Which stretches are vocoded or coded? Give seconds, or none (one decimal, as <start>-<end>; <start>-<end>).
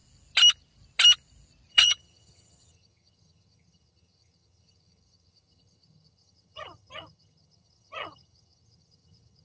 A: 1.7-9.4